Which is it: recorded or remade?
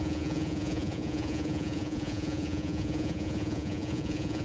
remade